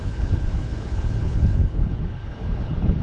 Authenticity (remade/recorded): remade